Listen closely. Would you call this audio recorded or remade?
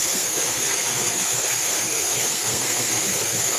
remade